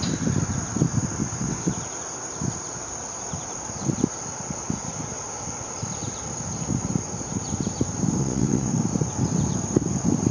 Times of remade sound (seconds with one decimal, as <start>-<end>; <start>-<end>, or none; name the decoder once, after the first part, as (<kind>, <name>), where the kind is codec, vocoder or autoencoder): 1.2-1.7 (vocoder, WaveNeXt); 8.2-8.7